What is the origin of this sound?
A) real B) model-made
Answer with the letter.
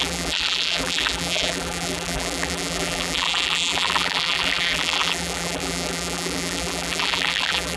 B